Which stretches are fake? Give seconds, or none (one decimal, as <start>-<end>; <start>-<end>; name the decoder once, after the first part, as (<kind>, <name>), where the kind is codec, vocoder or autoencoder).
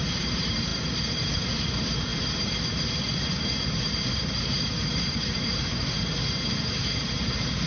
0.0-7.7 (vocoder, BigVGAN v2)